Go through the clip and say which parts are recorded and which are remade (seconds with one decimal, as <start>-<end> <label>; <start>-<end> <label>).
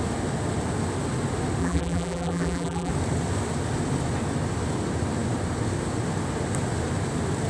0.0-1.6 recorded; 1.6-2.9 remade; 2.9-7.5 recorded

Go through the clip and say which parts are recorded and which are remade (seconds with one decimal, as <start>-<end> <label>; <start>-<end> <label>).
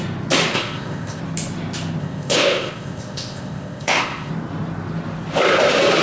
0.0-0.5 recorded; 0.5-1.2 remade; 1.2-2.0 recorded; 2.0-4.3 remade; 4.3-6.0 recorded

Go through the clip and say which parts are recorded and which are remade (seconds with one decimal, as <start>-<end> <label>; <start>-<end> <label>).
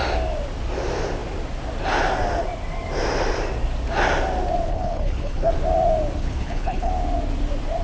0.0-4.7 recorded; 4.7-5.5 remade; 5.5-6.2 recorded; 6.2-6.9 remade; 6.9-7.8 recorded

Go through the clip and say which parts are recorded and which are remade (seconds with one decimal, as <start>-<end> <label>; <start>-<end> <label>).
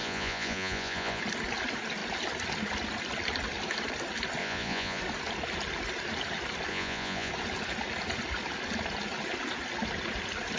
0.0-1.2 remade; 1.2-4.4 recorded; 4.4-5.0 remade; 5.0-6.7 recorded; 6.7-7.3 remade; 7.3-10.6 recorded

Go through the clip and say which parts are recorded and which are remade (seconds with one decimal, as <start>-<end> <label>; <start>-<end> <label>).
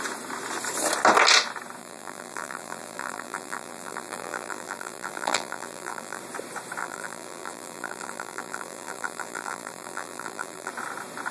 0.0-1.8 recorded; 1.8-6.2 remade; 6.2-6.8 recorded; 6.8-10.7 remade; 10.7-11.3 recorded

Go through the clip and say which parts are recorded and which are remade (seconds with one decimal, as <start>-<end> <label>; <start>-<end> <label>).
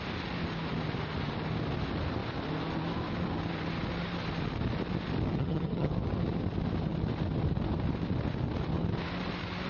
0.0-5.3 recorded; 5.3-5.9 remade; 5.9-9.7 recorded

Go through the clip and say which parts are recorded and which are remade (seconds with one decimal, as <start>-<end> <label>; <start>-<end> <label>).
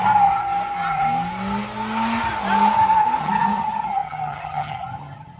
0.0-3.2 recorded; 3.2-5.4 remade